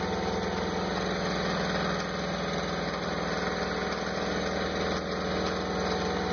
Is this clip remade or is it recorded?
recorded